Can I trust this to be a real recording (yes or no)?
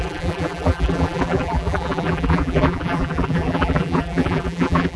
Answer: no